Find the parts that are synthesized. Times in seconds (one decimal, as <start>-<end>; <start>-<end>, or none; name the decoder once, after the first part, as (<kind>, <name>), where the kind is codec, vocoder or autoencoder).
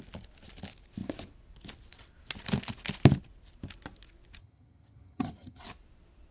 4.4-5.6 (vocoder, HiFi-GAN)